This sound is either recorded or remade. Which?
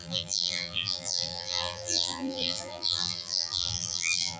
remade